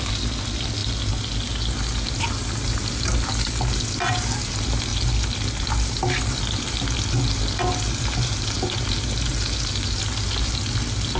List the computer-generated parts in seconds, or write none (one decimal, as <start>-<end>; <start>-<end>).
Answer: none